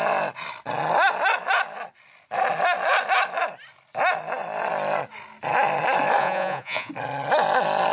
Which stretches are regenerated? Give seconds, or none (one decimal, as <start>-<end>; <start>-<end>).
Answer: 6.2-6.9